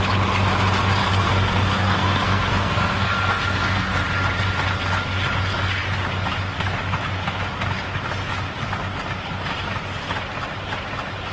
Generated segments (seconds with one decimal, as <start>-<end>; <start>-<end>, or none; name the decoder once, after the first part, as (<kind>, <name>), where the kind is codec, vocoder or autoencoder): 1.0-4.0 (codec, SNAC)